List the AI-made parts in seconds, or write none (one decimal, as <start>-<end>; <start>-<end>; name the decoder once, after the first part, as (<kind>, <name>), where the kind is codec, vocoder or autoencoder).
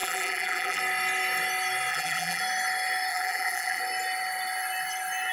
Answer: 0.0-0.8 (vocoder, BigVGAN v2); 1.9-2.4; 3.1-3.8